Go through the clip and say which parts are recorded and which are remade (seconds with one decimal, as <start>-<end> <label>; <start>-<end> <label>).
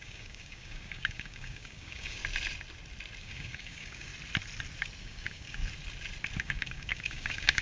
0.0-2.2 remade; 2.2-3.2 recorded; 3.2-4.1 remade; 4.1-5.0 recorded; 5.0-5.6 remade; 5.6-6.4 recorded; 6.4-7.6 remade